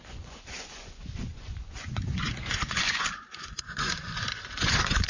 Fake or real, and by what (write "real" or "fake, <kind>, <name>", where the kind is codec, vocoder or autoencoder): fake, vocoder, Vocos